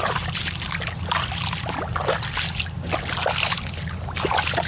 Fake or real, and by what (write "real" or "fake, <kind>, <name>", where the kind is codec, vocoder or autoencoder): real